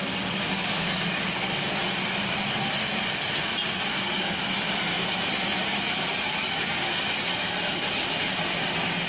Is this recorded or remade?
recorded